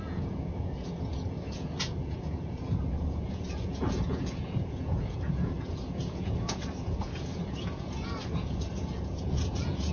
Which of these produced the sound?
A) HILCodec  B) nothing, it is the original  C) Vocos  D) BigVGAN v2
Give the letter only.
C